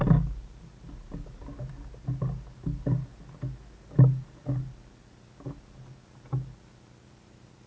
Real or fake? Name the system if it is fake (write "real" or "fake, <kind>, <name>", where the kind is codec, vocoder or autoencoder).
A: real